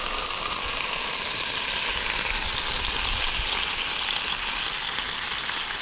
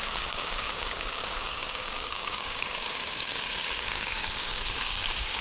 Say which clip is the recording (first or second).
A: first